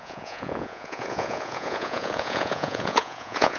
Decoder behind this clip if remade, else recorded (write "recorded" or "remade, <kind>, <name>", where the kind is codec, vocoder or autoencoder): remade, vocoder, Vocos